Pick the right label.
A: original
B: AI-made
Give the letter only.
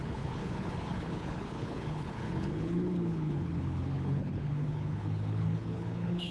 B